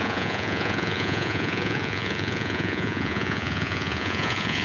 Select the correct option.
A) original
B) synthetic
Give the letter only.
B